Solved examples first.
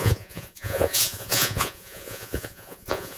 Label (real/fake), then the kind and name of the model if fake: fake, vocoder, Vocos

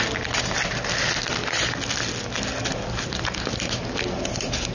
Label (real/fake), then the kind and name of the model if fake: real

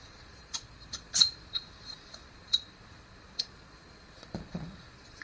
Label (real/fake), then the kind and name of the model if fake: fake, vocoder, Vocos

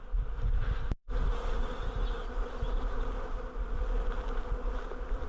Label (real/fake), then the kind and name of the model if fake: real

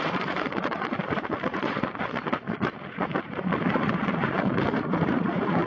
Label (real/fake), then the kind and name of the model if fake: fake, vocoder, Vocos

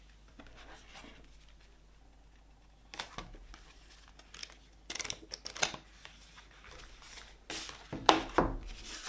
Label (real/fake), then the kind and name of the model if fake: real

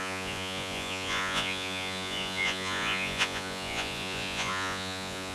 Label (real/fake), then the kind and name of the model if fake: fake, vocoder, Vocos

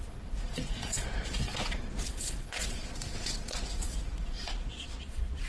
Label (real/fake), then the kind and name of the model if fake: fake, vocoder, Vocos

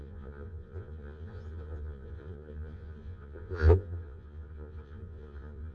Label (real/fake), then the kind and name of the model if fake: fake, vocoder, Vocos